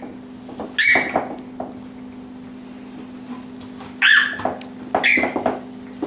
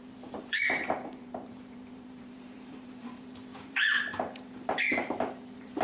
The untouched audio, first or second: first